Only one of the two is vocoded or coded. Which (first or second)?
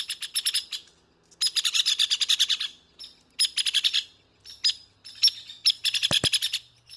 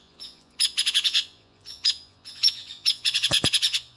second